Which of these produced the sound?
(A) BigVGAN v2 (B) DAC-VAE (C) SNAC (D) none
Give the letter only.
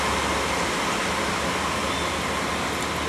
D